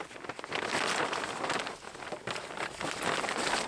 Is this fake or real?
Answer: real